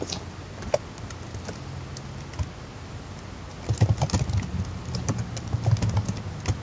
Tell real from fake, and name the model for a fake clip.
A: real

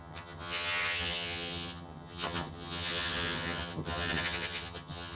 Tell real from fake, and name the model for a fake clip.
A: fake, vocoder, HiFi-GAN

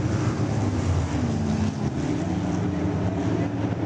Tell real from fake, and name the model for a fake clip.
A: real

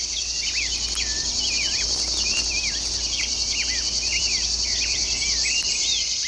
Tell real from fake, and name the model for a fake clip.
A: real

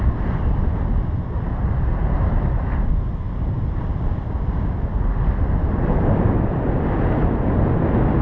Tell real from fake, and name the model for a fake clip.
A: real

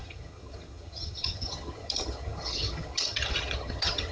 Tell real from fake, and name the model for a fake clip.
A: fake, vocoder, HiFi-GAN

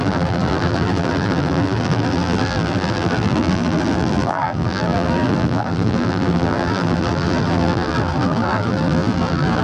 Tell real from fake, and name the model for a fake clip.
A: fake, vocoder, BigVGAN v2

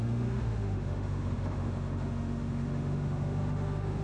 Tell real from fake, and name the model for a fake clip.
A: fake, autoencoder, DAC-VAE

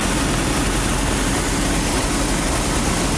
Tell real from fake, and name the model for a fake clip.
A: real